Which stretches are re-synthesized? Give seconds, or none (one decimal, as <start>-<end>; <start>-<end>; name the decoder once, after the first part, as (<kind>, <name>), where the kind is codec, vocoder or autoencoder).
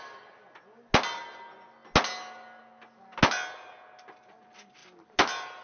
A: none